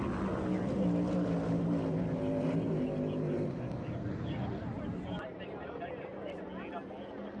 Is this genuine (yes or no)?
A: yes